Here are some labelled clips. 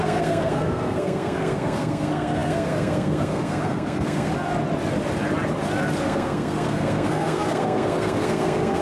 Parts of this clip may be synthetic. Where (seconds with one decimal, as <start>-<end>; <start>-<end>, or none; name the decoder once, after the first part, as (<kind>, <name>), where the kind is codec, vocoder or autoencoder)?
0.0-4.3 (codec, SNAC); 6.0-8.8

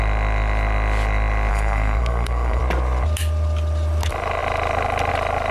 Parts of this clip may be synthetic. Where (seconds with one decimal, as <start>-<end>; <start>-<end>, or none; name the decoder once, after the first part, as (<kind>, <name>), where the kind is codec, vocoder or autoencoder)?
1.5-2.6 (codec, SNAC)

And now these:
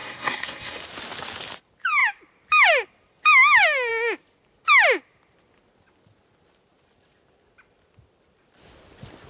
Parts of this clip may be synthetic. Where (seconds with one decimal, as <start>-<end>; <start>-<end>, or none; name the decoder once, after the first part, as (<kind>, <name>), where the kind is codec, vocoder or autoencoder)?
0.0-0.8 (codec, SNAC)